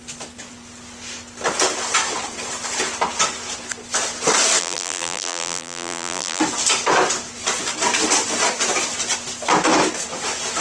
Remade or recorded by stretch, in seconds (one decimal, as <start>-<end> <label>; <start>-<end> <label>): 0.0-4.6 recorded; 4.6-6.4 remade; 6.4-10.6 recorded